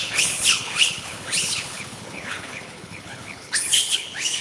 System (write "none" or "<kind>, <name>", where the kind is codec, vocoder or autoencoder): codec, HILCodec